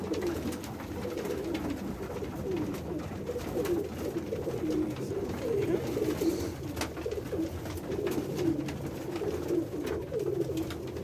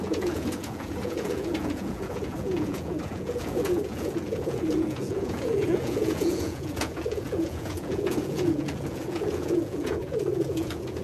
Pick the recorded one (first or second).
first